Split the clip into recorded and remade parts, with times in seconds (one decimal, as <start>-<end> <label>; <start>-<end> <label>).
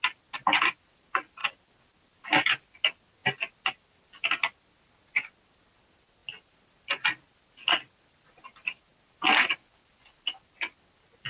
0.0-11.3 recorded